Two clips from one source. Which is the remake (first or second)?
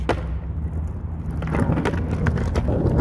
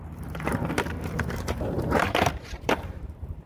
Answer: second